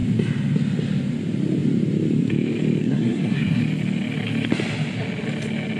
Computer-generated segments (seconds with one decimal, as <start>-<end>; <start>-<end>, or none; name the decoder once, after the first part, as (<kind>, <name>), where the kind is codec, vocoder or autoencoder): 2.8-3.6 (codec, SNAC)